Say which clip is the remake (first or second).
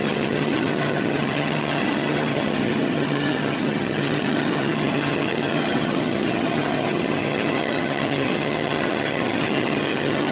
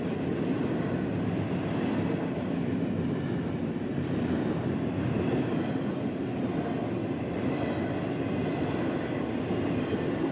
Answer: first